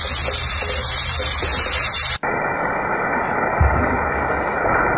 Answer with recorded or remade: recorded